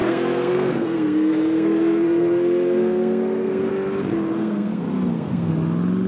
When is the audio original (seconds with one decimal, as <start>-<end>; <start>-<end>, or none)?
3.7-4.3; 5.5-6.1